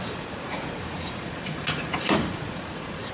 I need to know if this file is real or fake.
fake